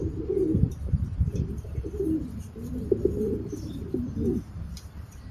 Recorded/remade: remade